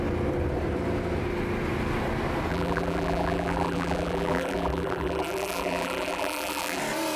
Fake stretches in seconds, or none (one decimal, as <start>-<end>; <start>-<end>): 2.5-6.8